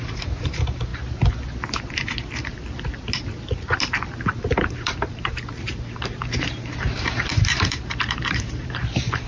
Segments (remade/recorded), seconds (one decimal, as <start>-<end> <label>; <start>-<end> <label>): 0.0-0.9 remade; 0.9-4.5 recorded; 4.5-9.3 remade